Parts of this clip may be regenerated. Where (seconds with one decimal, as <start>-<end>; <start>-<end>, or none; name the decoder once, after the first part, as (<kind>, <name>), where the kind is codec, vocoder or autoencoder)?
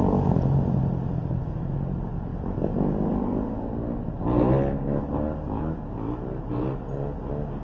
none